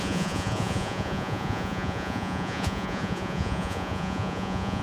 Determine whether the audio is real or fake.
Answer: fake